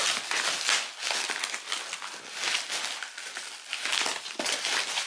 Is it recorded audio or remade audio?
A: recorded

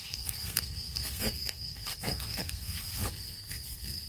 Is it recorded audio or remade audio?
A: remade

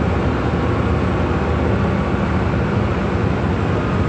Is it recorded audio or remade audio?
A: recorded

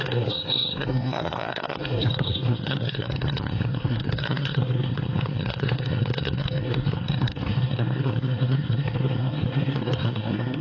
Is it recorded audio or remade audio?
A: remade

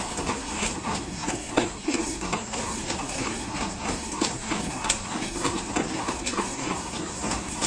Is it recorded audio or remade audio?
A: remade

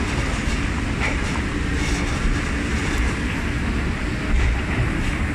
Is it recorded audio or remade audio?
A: recorded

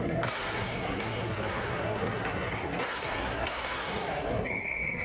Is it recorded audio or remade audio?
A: remade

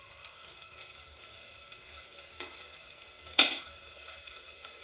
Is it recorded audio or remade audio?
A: remade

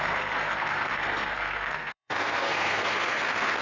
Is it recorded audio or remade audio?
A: remade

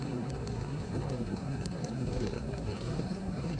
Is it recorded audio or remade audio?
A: remade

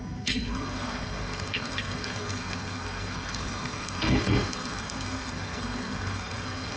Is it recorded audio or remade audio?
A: remade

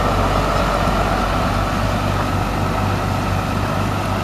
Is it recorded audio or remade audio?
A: recorded